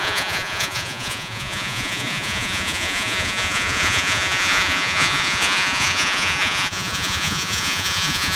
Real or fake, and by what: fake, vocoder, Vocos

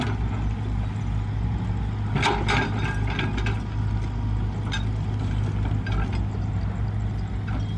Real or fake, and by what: real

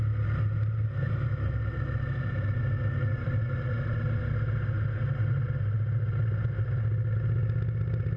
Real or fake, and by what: real